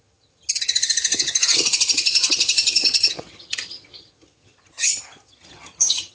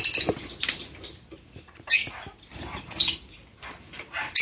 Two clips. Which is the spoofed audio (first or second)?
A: first